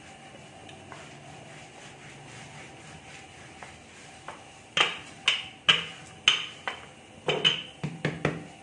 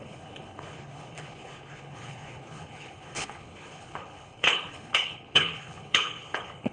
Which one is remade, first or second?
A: second